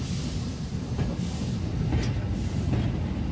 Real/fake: real